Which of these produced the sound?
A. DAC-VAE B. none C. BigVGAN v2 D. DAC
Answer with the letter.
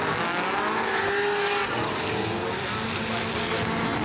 B